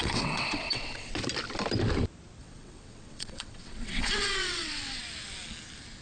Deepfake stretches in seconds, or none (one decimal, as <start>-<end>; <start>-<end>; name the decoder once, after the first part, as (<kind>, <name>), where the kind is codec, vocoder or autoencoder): 0.0-1.1 (vocoder, WaveNeXt); 2.4-5.0